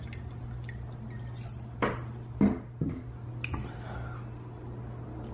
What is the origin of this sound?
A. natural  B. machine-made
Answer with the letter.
A